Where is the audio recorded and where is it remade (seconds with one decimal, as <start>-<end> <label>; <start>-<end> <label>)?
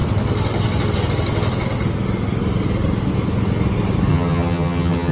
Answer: 0.0-4.1 recorded; 4.1-5.1 remade